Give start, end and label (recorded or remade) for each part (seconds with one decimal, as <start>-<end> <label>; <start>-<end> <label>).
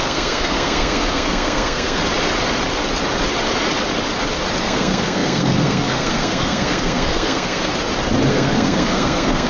0.0-2.0 remade; 2.0-4.6 recorded; 4.6-7.7 remade; 7.7-8.3 recorded; 8.3-9.5 remade